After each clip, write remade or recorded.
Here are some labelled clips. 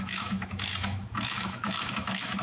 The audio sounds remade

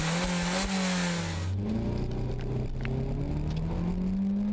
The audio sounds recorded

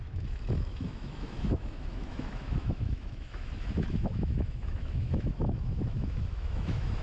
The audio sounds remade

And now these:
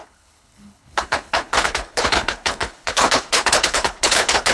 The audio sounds remade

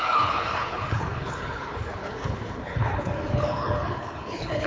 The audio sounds remade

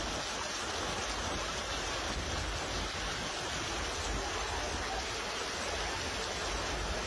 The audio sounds recorded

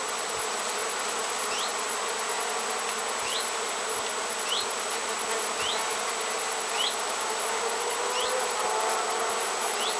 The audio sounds recorded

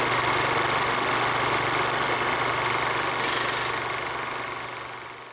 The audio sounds recorded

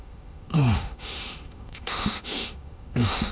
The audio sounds remade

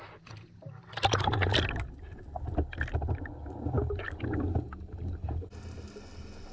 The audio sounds recorded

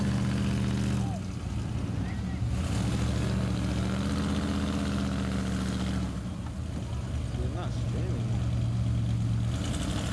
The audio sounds recorded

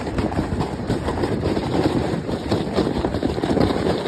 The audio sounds remade